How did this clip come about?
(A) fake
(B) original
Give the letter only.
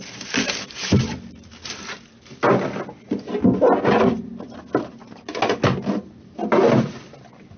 B